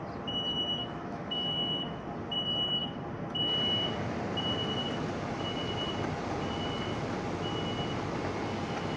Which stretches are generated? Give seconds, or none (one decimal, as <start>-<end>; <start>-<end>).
0.8-2.0